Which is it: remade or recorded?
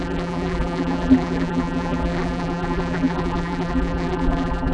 remade